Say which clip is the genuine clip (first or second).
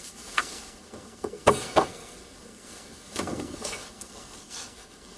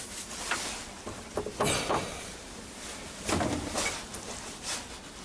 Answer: second